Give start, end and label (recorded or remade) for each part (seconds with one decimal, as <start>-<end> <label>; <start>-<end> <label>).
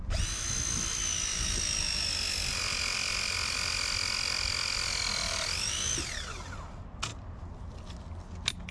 0.0-8.7 recorded